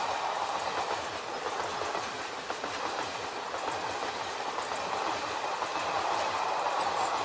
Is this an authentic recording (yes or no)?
yes